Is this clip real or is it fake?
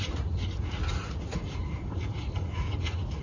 fake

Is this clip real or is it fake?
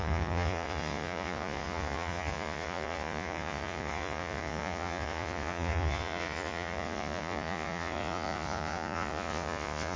fake